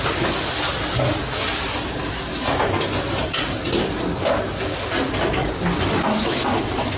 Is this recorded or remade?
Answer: recorded